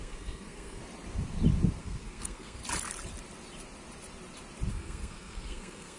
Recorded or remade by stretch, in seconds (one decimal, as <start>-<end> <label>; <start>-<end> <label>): 0.0-0.8 remade; 0.8-1.8 recorded; 1.8-2.6 remade; 2.6-4.7 recorded; 4.7-6.0 remade

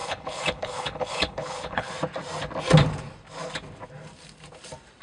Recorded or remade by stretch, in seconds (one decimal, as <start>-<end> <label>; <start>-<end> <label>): 0.0-1.9 remade; 1.9-5.0 recorded

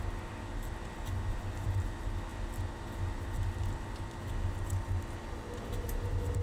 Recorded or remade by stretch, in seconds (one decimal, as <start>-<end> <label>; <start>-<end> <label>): 0.0-6.4 recorded

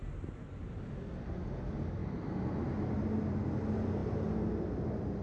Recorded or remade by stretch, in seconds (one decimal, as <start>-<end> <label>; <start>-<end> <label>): 0.0-5.2 recorded